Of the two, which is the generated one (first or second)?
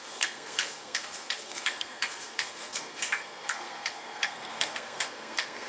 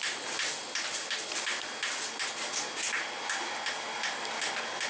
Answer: first